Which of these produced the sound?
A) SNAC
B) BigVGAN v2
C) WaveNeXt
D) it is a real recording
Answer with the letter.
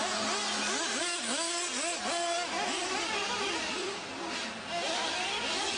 D